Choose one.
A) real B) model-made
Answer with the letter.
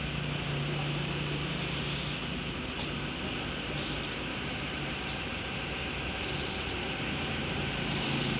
A